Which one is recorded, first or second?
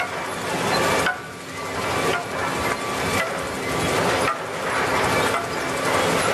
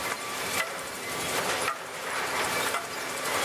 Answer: first